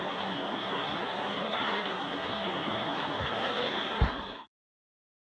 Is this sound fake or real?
fake